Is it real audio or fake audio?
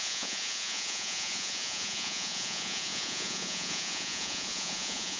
fake